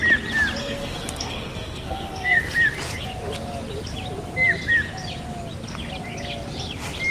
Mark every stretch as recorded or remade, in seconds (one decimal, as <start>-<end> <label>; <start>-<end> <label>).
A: 0.0-0.6 recorded; 0.6-2.4 remade; 2.4-7.1 recorded